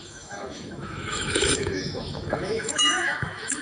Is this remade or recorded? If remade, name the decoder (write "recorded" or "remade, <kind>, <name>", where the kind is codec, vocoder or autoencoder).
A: remade, autoencoder, DAC-VAE